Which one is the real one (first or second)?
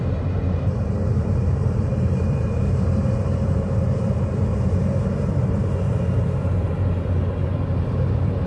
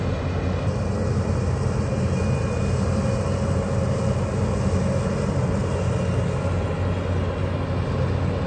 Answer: second